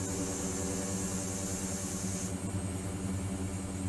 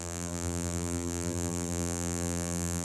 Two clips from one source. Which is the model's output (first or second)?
second